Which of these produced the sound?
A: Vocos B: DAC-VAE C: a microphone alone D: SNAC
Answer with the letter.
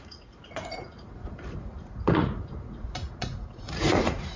A